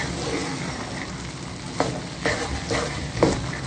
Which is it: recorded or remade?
recorded